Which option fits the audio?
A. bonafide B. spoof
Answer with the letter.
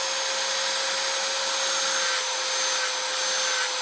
A